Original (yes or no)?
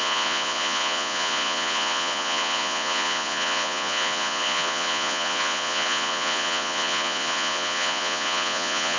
no